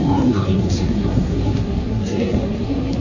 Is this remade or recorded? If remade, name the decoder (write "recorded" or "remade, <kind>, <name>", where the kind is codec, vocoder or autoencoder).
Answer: remade, codec, SNAC